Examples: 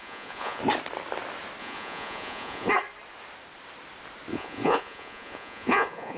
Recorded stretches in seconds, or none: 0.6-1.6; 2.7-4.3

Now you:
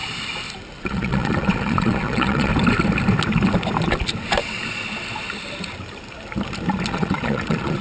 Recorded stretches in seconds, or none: 0.0-0.8; 2.5-6.9

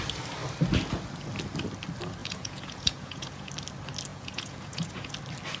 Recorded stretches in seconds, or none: 0.0-2.2; 3.5-4.1; 5.1-5.6

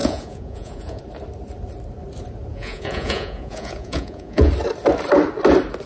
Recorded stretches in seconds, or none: 1.0-2.5; 4.5-5.9

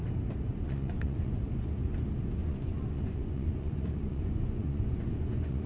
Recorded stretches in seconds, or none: 0.0-0.5; 1.4-2.4

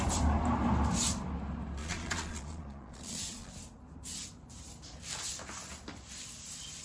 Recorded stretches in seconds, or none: 0.0-1.8; 3.5-6.8

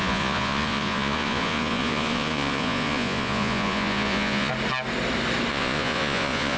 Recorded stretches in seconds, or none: 4.5-5.5

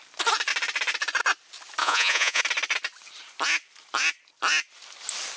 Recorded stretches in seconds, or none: 0.0-1.8; 2.4-5.4